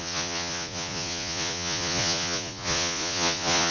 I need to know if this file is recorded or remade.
remade